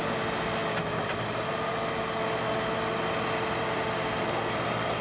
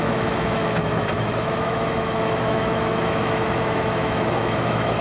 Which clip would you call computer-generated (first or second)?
second